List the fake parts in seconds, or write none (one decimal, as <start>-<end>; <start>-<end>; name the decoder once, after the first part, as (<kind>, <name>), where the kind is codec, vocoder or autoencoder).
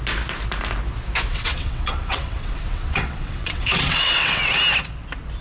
1.3-4.5 (vocoder, WaveNeXt)